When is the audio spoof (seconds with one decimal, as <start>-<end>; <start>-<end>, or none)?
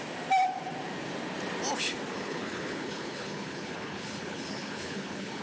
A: 2.1-5.4